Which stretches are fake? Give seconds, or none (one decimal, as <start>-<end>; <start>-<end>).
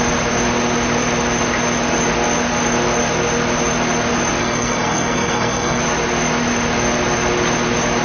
4.4-5.8